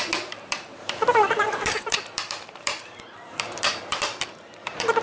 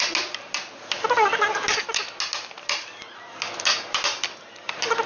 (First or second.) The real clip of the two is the second